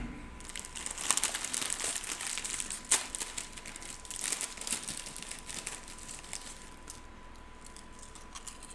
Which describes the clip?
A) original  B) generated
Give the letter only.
A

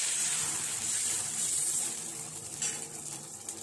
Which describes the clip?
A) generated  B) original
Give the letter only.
A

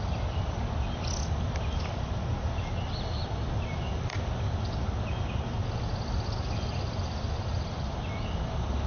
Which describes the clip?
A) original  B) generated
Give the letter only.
A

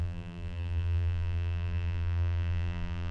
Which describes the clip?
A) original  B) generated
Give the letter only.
B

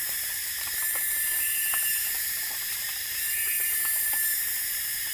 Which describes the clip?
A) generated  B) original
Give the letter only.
A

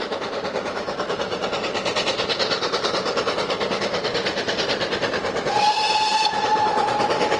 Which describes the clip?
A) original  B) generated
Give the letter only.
B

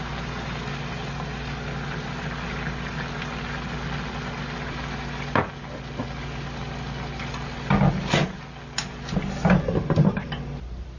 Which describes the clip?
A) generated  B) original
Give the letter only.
B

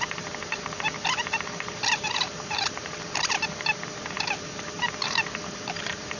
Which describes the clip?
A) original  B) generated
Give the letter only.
B